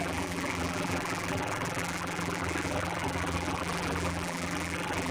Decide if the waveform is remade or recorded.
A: remade